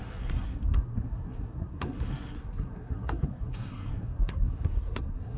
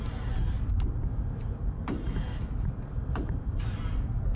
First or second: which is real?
second